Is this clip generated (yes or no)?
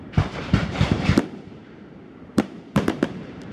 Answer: yes